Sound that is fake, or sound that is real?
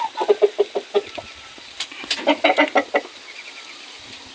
real